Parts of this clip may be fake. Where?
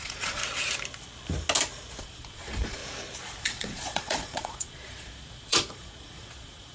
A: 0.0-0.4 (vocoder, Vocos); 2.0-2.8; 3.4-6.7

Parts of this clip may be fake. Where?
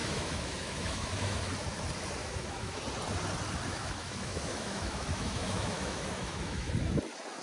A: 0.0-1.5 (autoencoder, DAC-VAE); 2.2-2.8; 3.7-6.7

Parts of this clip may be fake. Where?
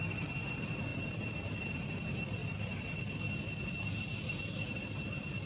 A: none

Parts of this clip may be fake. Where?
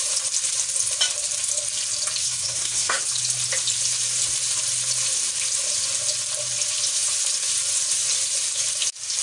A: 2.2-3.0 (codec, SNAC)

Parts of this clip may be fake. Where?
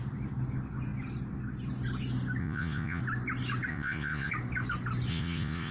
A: 2.4-3.0 (vocoder, Vocos); 3.7-4.3; 5.1-5.7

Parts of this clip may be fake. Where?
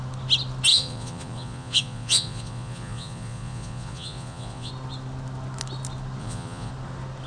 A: 0.7-4.7 (vocoder, Vocos); 6.2-6.7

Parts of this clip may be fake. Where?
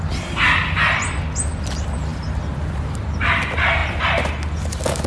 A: none